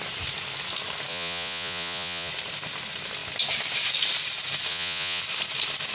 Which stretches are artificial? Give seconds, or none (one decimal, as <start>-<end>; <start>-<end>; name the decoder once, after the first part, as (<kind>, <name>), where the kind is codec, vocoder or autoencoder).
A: 1.1-2.3 (vocoder, Vocos); 4.7-5.2